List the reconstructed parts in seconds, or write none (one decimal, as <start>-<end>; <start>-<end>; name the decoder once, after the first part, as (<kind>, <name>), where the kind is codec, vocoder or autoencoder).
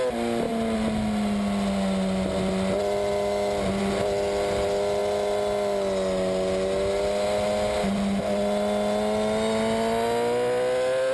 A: none